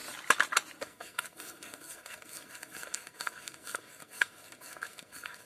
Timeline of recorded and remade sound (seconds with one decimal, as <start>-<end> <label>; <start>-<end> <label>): 0.0-0.8 recorded; 0.8-5.5 remade